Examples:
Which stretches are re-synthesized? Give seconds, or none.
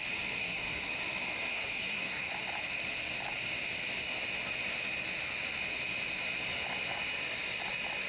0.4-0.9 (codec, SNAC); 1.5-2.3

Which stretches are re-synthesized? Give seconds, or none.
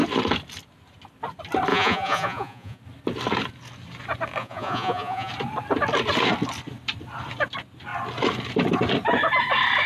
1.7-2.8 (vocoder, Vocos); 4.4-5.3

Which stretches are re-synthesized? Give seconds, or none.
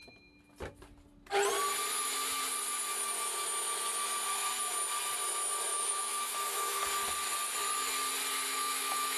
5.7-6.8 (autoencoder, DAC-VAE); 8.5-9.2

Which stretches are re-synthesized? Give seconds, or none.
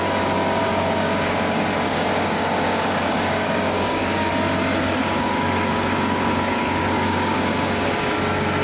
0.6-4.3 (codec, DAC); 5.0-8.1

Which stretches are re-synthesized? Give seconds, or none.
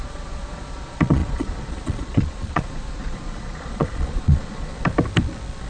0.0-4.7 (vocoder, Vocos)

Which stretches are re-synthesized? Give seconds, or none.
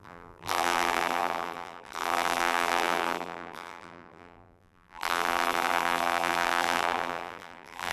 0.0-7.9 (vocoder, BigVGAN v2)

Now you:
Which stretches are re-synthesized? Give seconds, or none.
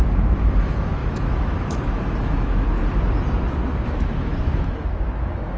0.0-2.8 (autoencoder, DAC-VAE); 3.5-5.6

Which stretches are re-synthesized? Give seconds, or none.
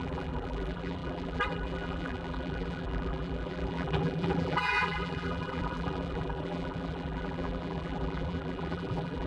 0.0-9.3 (vocoder, BigVGAN v2)